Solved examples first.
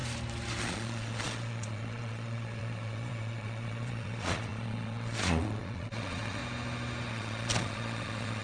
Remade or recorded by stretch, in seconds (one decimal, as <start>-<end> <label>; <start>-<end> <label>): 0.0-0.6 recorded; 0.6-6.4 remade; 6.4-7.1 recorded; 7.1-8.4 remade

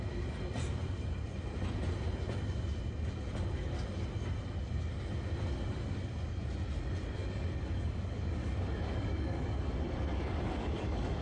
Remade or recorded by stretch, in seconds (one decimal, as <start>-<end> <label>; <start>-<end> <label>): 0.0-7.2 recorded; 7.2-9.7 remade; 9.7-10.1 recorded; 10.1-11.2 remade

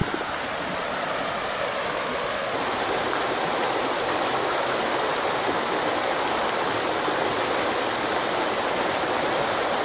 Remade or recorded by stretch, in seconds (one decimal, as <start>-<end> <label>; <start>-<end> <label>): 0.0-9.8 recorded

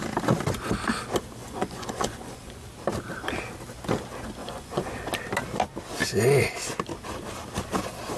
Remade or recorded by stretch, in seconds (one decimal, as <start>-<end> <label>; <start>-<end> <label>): 0.0-1.4 recorded; 1.4-2.7 remade; 2.7-4.4 recorded; 4.4-5.0 remade; 5.0-8.2 recorded